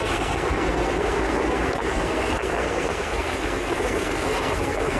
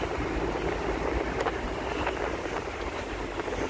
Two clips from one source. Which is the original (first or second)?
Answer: second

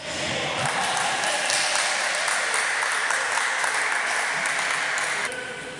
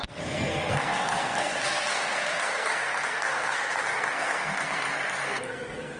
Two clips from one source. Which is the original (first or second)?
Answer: first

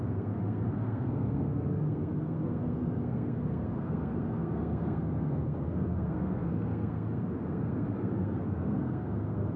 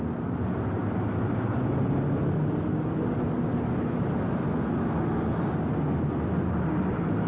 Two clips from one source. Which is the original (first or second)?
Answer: second